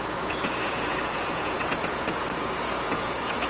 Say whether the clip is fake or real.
fake